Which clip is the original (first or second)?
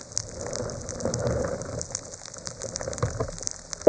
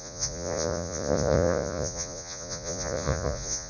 first